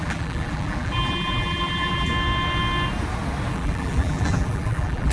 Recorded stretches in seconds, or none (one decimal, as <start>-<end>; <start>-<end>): 2.1-3.5